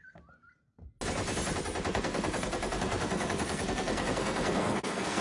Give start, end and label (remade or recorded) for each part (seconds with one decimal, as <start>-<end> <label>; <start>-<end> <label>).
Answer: 0.0-1.9 recorded; 1.9-5.2 remade